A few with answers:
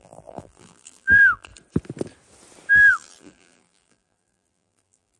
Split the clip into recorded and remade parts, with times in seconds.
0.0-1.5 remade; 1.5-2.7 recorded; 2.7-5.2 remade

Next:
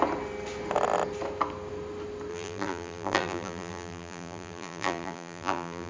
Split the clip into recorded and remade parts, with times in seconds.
0.0-2.3 recorded; 2.3-5.9 remade

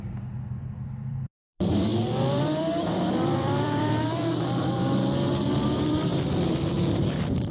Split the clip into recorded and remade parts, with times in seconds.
0.0-1.9 remade; 1.9-2.4 recorded; 2.4-6.1 remade; 6.1-6.9 recorded; 6.9-7.5 remade

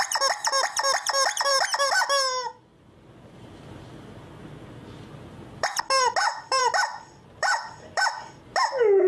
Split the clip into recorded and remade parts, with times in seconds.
0.0-6.2 recorded; 6.2-8.3 remade; 8.3-9.1 recorded

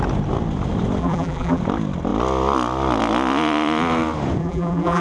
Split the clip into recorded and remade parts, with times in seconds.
0.0-1.0 recorded; 1.0-1.6 remade; 1.6-4.4 recorded; 4.4-5.0 remade